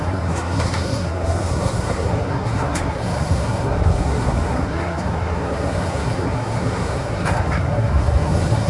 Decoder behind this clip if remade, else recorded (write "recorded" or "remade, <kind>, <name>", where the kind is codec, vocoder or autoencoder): remade, codec, SNAC